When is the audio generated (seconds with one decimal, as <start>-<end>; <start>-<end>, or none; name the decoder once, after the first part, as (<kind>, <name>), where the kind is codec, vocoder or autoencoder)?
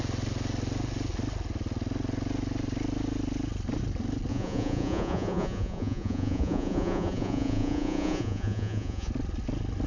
4.3-9.1 (vocoder, Vocos)